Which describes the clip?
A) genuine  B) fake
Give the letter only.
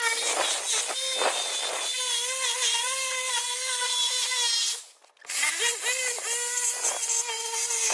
A